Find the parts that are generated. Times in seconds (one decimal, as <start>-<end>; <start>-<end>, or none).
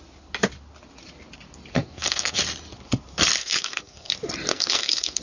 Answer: 1.7-2.4; 3.4-4.1; 4.5-5.2